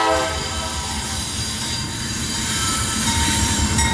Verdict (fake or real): fake